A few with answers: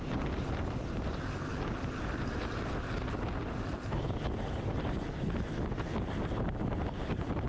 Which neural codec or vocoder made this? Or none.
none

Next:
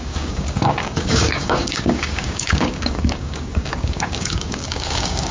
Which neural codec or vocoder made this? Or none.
codec, DAC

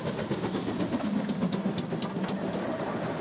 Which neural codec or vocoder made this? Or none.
none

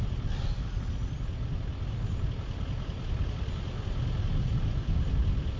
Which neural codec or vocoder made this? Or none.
none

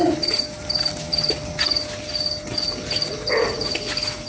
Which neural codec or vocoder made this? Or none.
none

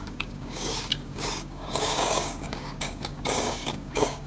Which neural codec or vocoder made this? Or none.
codec, DAC